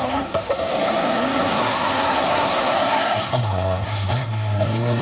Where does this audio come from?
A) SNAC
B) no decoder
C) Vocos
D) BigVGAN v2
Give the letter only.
A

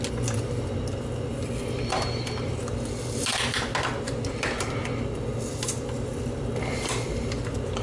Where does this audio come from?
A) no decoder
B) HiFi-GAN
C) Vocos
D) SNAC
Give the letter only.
A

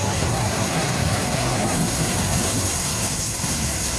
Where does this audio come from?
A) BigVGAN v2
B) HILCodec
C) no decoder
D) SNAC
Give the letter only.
D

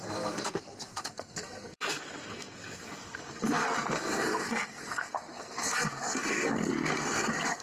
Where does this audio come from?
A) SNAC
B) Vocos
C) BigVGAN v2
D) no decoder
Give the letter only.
A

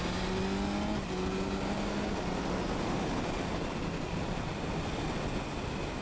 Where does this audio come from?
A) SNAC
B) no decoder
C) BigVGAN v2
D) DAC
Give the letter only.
B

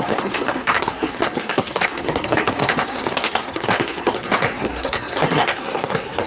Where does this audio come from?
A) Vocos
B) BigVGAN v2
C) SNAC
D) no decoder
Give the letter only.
C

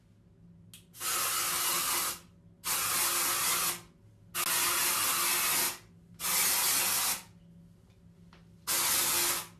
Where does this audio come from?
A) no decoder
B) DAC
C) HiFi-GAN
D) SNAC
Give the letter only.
A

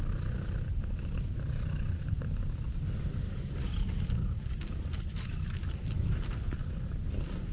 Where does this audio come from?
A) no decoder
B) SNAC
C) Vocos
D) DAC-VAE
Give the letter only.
A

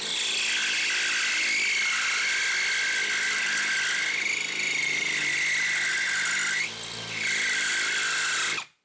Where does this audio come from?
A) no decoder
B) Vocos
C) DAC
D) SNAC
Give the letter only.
A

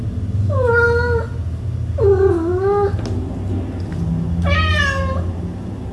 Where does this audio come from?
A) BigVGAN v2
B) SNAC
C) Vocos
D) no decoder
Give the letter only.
D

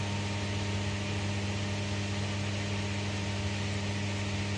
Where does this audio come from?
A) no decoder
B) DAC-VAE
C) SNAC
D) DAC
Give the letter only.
A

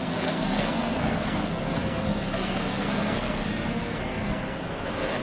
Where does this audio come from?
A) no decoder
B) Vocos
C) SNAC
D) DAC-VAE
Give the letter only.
C